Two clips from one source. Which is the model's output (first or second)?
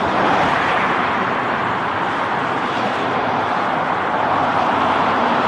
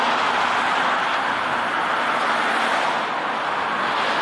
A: first